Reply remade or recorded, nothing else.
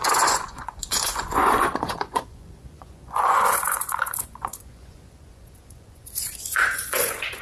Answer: remade